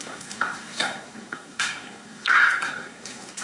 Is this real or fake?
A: fake